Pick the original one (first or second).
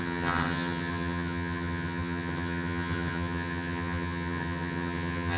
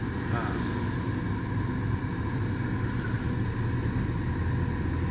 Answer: second